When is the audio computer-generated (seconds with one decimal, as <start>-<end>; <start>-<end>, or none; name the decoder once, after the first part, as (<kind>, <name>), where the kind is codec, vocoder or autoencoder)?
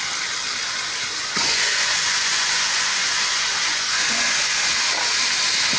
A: 1.2-4.7 (vocoder, Vocos)